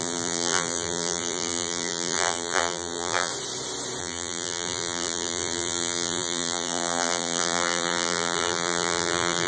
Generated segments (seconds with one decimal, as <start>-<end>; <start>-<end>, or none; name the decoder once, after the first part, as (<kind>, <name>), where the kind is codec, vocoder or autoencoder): 0.0-3.3 (vocoder, BigVGAN v2); 4.0-9.5